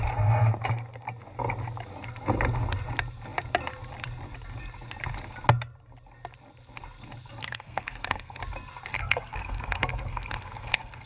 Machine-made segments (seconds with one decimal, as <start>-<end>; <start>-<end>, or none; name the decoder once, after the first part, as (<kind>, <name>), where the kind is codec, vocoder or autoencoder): 7.4-8.4 (codec, SNAC); 8.9-11.1